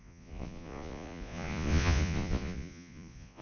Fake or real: fake